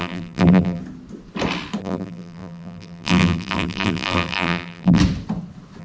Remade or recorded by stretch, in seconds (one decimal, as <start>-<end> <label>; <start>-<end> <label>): 0.0-0.8 remade; 0.8-1.8 recorded; 1.8-5.0 remade; 5.0-5.8 recorded